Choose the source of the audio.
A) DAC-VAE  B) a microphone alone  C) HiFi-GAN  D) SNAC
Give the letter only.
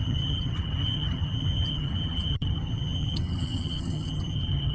C